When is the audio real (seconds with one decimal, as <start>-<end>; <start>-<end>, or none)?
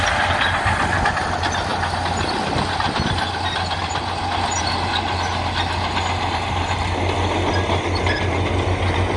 0.0-9.2